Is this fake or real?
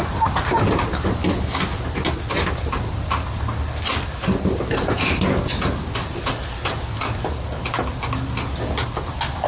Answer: real